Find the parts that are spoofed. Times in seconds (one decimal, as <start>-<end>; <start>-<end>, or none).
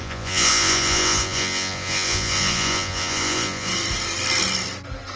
0.0-3.7